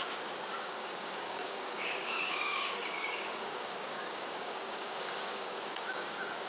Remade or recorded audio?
remade